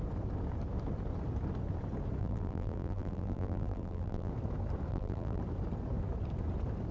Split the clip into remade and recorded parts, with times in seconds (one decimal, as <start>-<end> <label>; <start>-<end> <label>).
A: 0.0-2.2 recorded; 2.2-4.3 remade; 4.3-4.9 recorded; 4.9-5.4 remade; 5.4-6.9 recorded